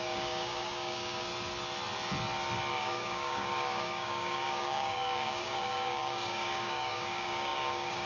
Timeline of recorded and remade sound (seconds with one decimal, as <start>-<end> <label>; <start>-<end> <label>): 0.0-1.3 remade; 1.3-2.7 recorded; 2.7-8.1 remade